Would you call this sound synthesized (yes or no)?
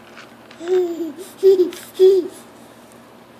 no